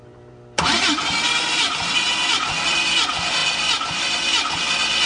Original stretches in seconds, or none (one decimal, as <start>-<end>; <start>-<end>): 2.8-5.1